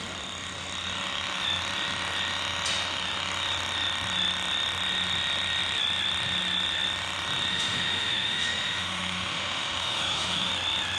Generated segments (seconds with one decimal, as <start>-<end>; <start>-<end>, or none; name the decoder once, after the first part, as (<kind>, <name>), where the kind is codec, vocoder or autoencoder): 7.5-10.5 (autoencoder, DAC-VAE)